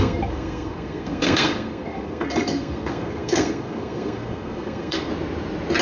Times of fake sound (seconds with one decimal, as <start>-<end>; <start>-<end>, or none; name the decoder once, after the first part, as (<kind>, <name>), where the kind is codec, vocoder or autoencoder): 0.0-5.1 (codec, SNAC)